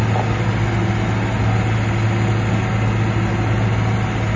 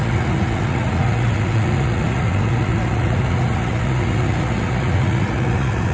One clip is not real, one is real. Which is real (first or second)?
first